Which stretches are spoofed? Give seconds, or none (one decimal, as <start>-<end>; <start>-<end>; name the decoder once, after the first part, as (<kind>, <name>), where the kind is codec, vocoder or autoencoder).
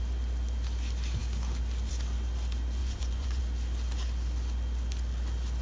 2.8-3.4 (vocoder, Vocos)